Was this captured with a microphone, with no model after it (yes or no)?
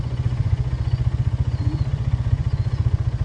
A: no